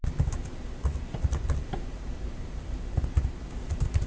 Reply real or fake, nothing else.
real